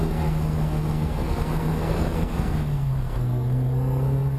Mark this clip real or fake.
fake